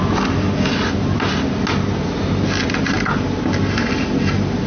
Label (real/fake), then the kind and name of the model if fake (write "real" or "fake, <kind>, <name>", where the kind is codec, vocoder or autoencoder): real